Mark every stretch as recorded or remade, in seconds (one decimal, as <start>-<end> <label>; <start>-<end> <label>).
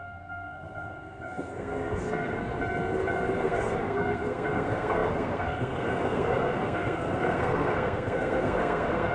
0.0-2.5 remade; 2.5-3.1 recorded; 3.1-9.1 remade